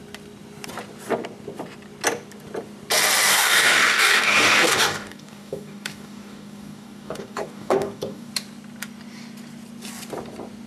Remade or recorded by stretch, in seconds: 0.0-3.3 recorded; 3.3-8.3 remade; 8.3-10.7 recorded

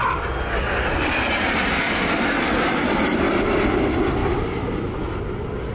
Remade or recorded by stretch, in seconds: 0.0-5.7 recorded

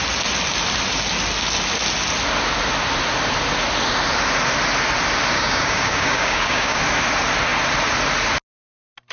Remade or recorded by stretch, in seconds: 0.0-5.3 recorded; 5.3-6.8 remade; 6.8-9.1 recorded